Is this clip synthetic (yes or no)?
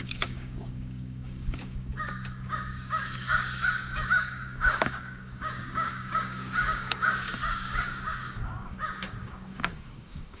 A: yes